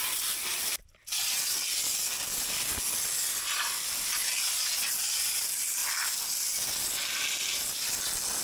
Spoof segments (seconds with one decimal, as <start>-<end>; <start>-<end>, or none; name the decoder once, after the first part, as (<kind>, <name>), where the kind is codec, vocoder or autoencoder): none

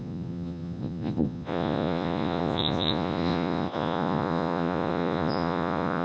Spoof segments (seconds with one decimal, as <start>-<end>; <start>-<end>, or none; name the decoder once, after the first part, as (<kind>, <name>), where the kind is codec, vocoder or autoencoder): 0.0-6.0 (vocoder, Vocos)

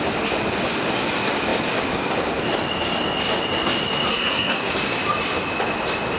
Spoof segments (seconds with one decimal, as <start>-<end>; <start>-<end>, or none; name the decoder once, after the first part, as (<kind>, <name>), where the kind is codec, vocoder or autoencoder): 4.1-4.7 (codec, SNAC)

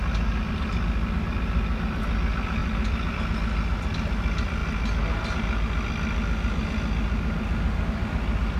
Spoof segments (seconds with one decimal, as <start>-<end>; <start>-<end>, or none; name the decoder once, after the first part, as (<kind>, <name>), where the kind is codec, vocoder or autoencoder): 2.6-3.2 (vocoder, BigVGAN v2)

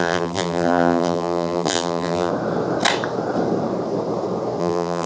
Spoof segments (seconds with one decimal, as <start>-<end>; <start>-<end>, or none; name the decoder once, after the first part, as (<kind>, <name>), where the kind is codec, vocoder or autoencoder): 0.0-2.3 (vocoder, BigVGAN v2); 4.6-5.1

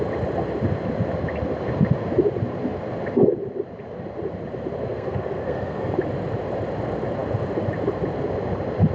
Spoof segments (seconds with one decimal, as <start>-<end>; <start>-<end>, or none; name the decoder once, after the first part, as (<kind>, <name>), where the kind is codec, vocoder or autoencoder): 4.8-5.9 (codec, SNAC)

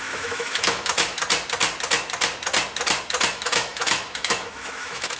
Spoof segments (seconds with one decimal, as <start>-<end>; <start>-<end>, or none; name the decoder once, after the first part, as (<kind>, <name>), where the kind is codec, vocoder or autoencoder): 0.0-1.2 (autoencoder, DAC-VAE); 3.3-5.2

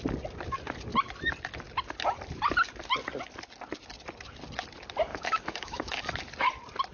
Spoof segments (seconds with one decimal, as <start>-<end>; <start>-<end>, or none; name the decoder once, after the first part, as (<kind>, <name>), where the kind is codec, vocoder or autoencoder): 5.1-6.0 (autoencoder, DAC-VAE)